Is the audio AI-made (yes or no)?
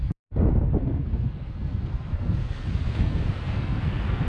yes